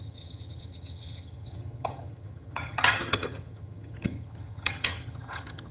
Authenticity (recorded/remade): remade